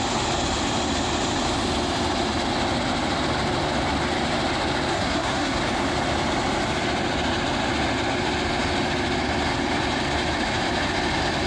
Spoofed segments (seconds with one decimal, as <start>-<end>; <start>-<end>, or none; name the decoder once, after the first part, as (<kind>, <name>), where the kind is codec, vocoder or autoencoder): 4.9-5.6 (codec, SNAC)

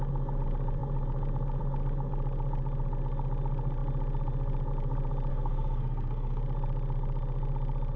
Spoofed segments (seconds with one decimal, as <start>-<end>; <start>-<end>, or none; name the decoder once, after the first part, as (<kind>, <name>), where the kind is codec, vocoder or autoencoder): 5.3-6.4 (codec, SNAC)

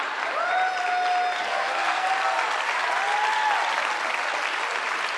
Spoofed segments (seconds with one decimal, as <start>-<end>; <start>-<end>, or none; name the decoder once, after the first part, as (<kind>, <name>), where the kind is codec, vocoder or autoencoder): 1.4-2.1 (codec, SNAC)